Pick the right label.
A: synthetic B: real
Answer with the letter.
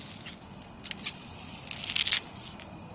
B